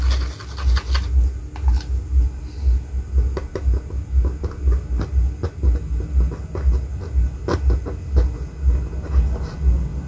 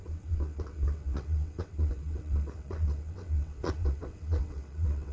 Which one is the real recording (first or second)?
first